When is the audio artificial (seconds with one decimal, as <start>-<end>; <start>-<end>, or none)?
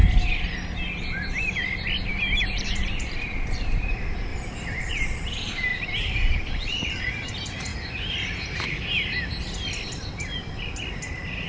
2.1-4.3; 4.8-7.7; 10.1-11.5